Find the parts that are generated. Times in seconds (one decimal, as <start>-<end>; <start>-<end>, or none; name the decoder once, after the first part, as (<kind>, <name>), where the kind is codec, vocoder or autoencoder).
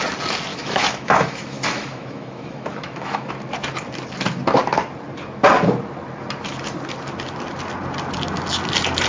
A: 0.5-3.3 (autoencoder, DAC-VAE)